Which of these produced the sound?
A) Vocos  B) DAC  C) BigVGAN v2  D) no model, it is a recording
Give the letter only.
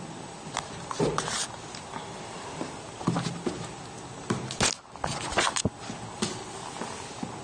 D